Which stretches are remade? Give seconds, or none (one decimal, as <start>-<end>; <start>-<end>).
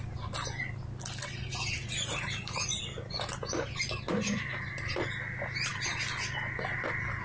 1.8-2.8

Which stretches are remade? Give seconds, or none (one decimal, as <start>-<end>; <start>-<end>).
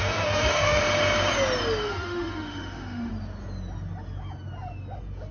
0.0-0.8; 1.8-3.1